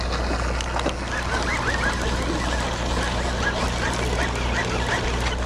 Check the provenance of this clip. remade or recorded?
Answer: recorded